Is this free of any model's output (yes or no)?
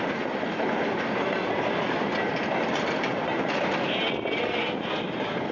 yes